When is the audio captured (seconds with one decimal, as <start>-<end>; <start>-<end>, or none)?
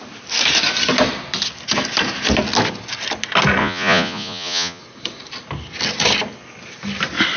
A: 0.0-3.6; 4.8-7.4